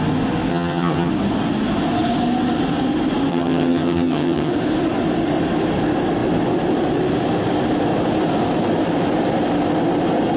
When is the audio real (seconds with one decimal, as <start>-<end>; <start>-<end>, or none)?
0.0-0.5; 1.1-3.3; 4.5-10.4